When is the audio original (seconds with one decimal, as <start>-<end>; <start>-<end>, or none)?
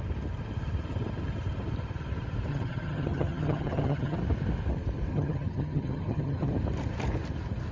0.0-2.5; 4.2-5.1; 6.5-7.7